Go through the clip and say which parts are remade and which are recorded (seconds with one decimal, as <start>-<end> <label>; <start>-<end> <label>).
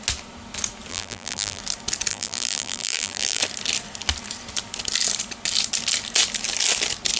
0.0-0.9 recorded; 0.9-1.6 remade; 1.6-2.1 recorded; 2.1-3.4 remade; 3.4-7.2 recorded